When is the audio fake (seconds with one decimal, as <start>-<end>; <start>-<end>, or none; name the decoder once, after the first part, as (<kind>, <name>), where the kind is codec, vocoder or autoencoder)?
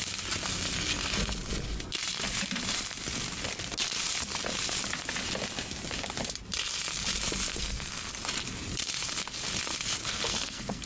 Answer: 7.5-8.1 (codec, SNAC); 10.0-10.9